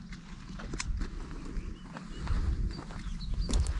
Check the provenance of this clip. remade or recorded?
recorded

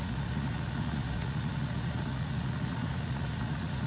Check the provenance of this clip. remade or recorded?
remade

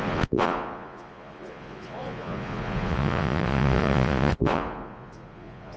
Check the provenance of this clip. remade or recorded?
remade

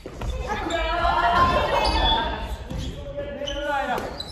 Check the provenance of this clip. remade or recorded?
recorded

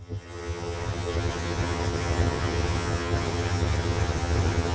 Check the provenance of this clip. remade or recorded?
remade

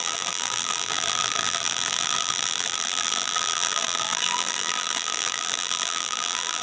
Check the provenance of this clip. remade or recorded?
remade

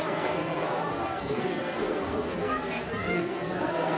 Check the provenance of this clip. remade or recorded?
remade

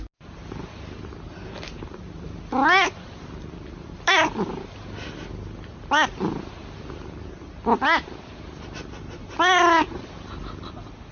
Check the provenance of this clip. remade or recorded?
recorded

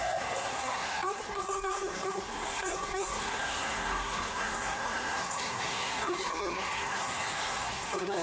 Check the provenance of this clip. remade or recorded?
remade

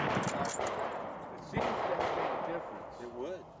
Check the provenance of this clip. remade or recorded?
recorded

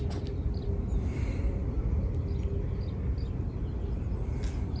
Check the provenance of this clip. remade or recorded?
recorded